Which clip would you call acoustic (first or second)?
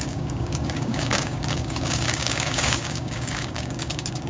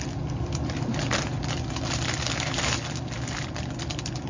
second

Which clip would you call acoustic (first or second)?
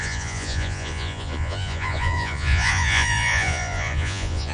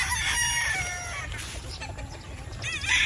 second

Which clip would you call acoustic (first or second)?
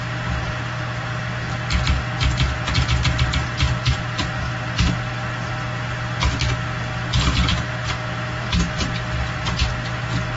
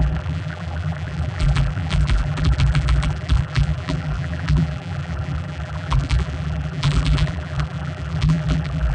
first